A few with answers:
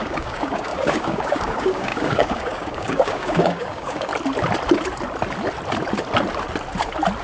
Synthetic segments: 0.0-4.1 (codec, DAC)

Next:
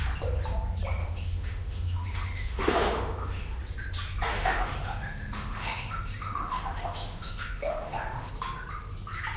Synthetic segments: 1.0-3.6 (autoencoder, DAC-VAE); 4.3-8.3

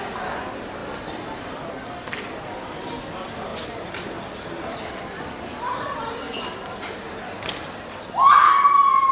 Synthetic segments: none

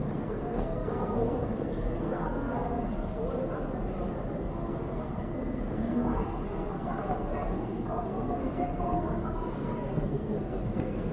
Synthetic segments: 0.0-3.2 (codec, SNAC); 4.4-11.1

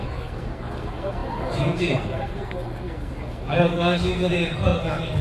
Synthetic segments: 0.0-5.2 (codec, SNAC)

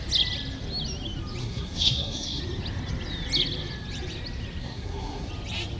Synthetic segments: 1.4-2.4 (codec, SNAC); 4.6-5.3

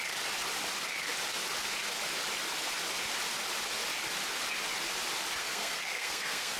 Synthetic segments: 5.4-6.6 (codec, SNAC)